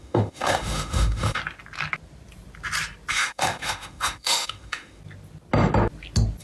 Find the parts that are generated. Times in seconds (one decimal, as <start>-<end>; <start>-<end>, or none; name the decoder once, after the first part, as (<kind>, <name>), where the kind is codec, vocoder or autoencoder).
0.0-1.4 (autoencoder, DAC-VAE); 3.1-5.0